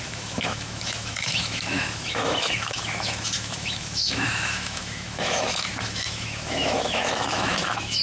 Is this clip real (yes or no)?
no